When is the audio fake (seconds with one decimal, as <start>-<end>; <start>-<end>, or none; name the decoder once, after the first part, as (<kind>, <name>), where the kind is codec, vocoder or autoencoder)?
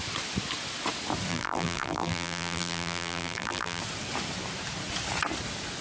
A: 1.3-3.8 (vocoder, BigVGAN v2)